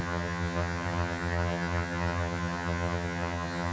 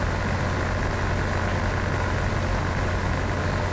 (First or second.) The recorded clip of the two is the second